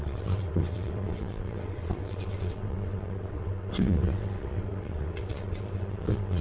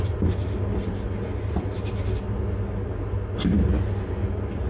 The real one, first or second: second